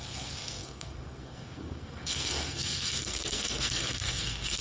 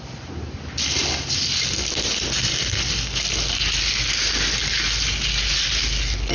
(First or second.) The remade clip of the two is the first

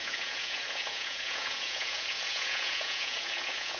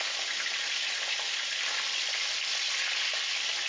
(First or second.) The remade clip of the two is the first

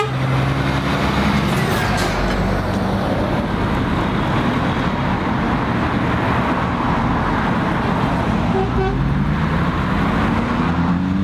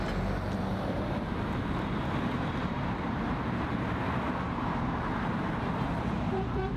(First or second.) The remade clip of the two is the second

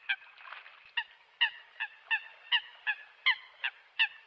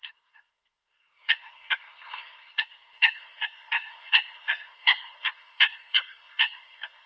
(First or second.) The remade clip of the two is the second